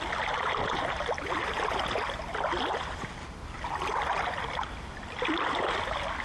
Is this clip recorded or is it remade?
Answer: recorded